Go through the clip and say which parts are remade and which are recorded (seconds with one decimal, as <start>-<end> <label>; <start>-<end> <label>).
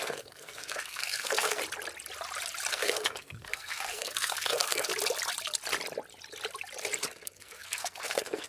0.0-1.6 remade; 1.6-2.7 recorded; 2.7-4.9 remade; 4.9-7.1 recorded; 7.1-8.5 remade